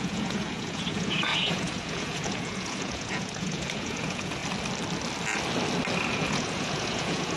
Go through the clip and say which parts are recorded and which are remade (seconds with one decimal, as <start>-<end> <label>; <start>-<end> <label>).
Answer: 0.0-4.4 remade; 4.4-6.1 recorded; 6.1-7.4 remade